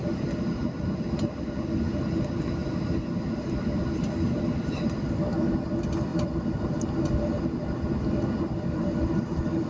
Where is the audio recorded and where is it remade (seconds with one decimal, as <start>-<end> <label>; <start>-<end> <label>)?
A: 0.0-9.7 recorded